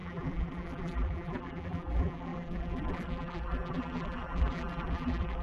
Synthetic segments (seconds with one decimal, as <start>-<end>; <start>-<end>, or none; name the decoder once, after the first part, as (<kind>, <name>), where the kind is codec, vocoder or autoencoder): 0.0-5.4 (vocoder, BigVGAN v2)